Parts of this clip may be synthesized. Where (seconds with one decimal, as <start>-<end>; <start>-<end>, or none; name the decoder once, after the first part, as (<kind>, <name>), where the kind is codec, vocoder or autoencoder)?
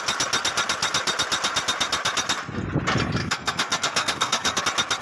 3.2-4.6 (codec, SNAC)